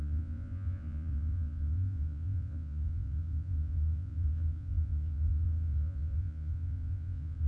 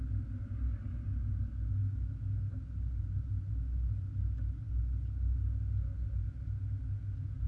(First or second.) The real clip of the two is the second